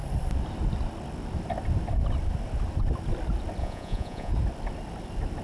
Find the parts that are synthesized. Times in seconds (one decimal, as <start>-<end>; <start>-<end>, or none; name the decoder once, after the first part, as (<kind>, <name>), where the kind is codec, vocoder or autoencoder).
3.6-4.3 (vocoder, Vocos)